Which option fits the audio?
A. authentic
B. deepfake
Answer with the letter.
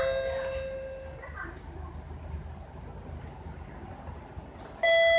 A